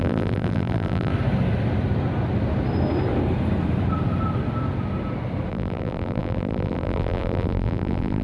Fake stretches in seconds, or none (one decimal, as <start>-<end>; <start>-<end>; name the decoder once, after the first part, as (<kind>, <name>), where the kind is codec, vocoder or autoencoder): 0.0-1.1 (vocoder, BigVGAN v2); 5.5-8.2